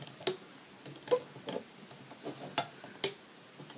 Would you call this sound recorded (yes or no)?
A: yes